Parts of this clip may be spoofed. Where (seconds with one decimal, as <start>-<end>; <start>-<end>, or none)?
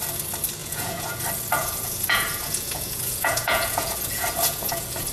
0.6-1.2; 1.6-5.1